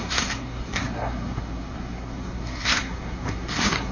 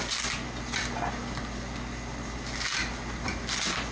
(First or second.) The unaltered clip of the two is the second